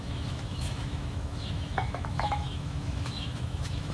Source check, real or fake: fake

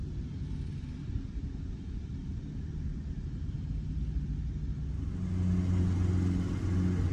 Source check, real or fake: real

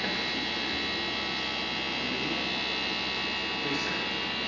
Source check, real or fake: real